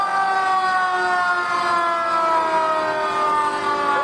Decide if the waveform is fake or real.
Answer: real